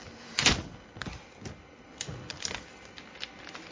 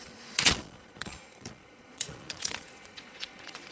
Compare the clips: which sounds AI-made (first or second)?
second